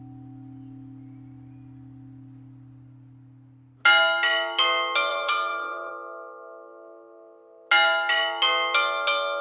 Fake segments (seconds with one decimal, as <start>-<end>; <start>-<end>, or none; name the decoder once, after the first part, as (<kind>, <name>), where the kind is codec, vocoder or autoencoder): 5.1-5.9 (vocoder, BigVGAN v2)